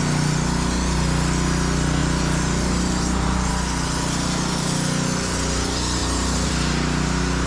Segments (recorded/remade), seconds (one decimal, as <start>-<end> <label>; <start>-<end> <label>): 0.0-2.0 recorded; 2.0-3.5 remade; 3.5-6.0 recorded; 6.0-6.5 remade; 6.5-7.5 recorded